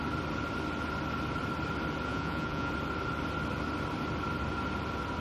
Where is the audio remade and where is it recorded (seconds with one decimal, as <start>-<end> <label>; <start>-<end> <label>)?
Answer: 0.0-2.1 recorded; 2.1-2.7 remade; 2.7-5.2 recorded